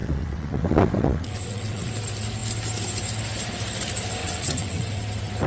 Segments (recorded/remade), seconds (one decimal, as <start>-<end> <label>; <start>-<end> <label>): 0.0-1.9 remade; 1.9-4.2 recorded; 4.2-5.0 remade; 5.0-5.5 recorded